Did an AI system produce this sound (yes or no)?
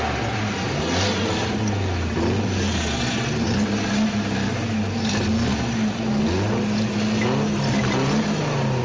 no